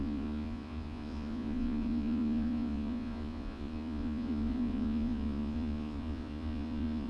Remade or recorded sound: remade